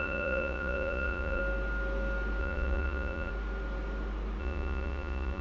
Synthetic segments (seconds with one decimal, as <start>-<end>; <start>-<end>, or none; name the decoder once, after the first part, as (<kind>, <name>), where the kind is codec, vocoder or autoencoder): 0.0-1.4 (vocoder, Vocos); 2.4-3.3; 4.4-5.4